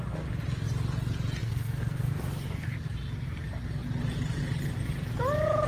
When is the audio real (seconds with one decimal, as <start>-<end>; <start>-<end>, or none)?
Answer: 0.0-1.4; 2.1-5.7